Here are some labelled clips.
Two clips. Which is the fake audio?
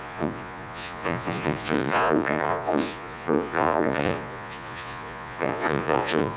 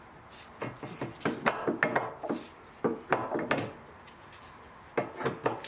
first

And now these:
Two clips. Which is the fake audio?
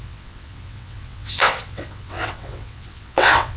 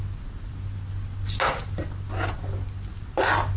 first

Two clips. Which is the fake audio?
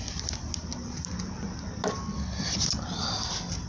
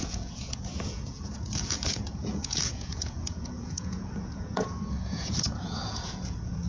second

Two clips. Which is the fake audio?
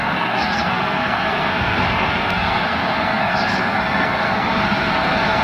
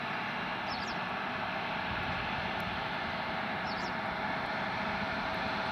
first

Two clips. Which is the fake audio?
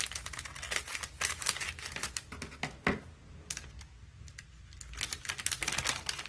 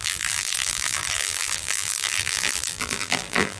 second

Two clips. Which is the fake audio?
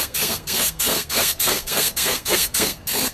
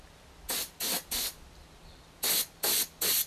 first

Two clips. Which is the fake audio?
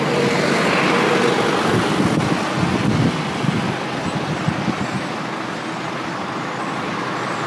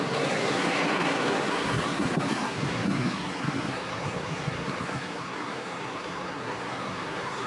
second